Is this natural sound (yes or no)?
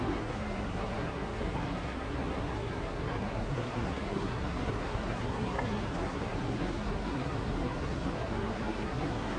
no